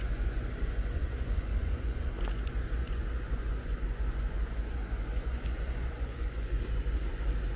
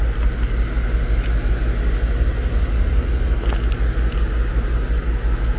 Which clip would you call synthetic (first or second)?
first